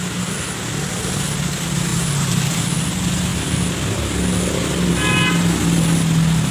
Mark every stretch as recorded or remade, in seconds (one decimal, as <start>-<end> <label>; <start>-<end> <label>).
0.0-1.9 recorded; 1.9-2.6 remade; 2.6-6.5 recorded